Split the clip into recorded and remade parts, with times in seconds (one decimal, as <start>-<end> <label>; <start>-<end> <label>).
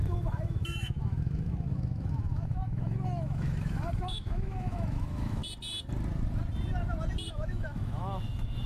0.0-5.4 remade; 5.4-7.3 recorded; 7.3-8.7 remade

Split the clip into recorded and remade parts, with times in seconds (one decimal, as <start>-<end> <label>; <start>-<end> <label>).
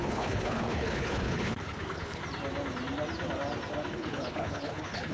0.0-2.2 remade; 2.2-3.9 recorded; 3.9-5.1 remade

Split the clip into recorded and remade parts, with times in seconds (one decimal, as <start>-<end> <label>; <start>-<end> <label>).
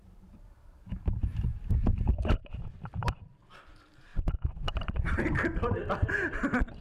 0.0-4.1 remade; 4.1-4.6 recorded; 4.6-6.8 remade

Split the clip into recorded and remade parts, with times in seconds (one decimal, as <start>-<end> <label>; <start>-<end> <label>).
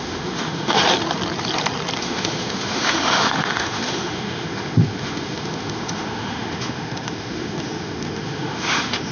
0.0-0.8 remade; 0.8-2.0 recorded; 2.0-9.1 remade